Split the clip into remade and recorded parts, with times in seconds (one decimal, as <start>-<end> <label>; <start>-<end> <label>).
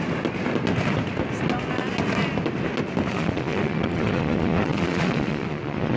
0.0-3.1 recorded; 3.1-6.0 remade